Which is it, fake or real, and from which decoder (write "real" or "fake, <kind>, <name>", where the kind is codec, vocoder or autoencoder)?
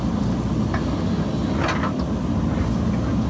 real